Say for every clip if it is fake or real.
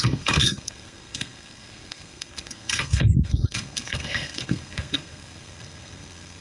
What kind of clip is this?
fake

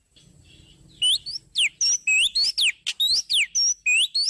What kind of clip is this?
real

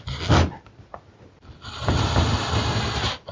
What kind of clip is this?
real